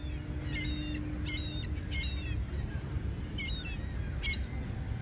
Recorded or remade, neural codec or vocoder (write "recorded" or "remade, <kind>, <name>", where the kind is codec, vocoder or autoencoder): recorded